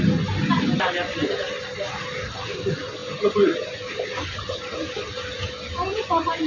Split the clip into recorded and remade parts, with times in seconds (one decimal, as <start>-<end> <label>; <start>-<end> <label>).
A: 0.0-6.5 recorded